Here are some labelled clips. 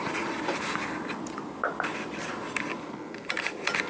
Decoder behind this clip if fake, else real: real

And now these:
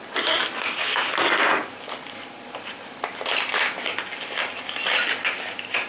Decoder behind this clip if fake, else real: real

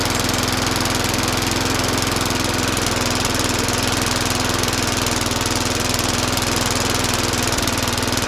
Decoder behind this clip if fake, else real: real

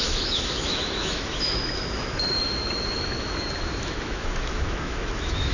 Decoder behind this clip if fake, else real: fake, autoencoder, DAC-VAE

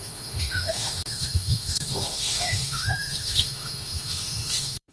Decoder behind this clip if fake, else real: fake, autoencoder, DAC-VAE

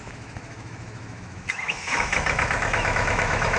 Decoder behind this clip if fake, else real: fake, autoencoder, DAC-VAE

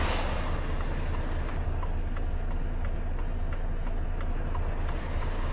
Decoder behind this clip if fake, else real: real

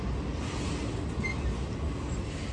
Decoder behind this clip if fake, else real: real